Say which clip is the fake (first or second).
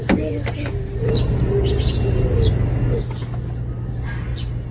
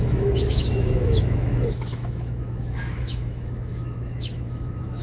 second